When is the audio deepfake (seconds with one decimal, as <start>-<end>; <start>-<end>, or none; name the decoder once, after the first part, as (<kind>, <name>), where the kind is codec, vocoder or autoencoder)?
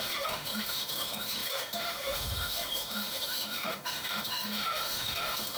0.0-5.6 (autoencoder, DAC-VAE)